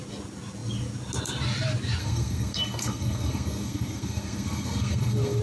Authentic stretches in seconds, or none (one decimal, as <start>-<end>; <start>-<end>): 0.0-2.0